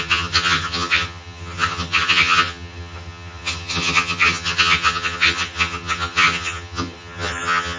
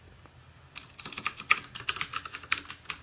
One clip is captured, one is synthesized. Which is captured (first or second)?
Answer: second